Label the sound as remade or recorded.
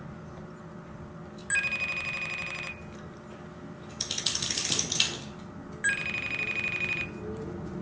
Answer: recorded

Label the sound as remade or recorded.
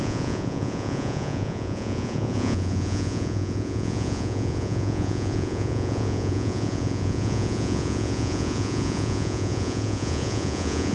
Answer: remade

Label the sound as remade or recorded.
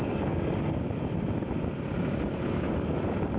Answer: recorded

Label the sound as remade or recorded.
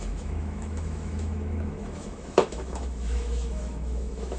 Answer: remade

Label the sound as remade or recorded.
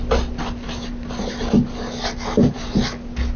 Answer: recorded